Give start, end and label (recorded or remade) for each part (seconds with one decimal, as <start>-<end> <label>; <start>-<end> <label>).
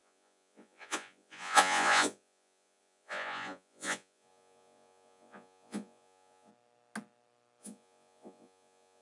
0.0-6.5 remade; 6.5-7.6 recorded; 7.6-9.0 remade